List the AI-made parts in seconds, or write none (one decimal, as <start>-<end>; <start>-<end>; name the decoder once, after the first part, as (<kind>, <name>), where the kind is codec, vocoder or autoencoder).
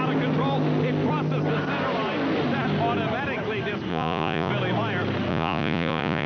3.9-4.5 (vocoder, Vocos); 5.3-6.3